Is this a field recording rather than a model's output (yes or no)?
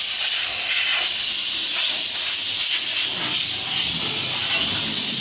yes